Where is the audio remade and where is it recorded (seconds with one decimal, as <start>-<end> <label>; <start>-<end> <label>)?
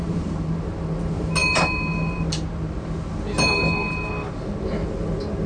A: 0.0-5.5 recorded